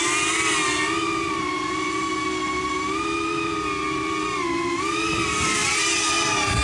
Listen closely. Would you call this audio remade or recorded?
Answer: remade